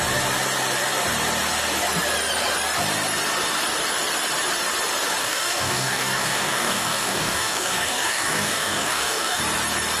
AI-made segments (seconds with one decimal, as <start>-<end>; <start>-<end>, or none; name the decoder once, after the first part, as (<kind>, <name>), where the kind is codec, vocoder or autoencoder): 5.2-9.4 (codec, DAC)